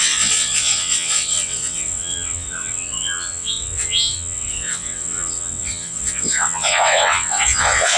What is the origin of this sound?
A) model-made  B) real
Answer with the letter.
A